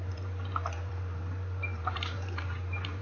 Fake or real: fake